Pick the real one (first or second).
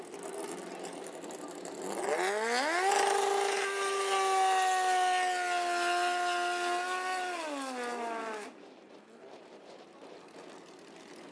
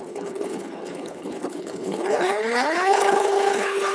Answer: first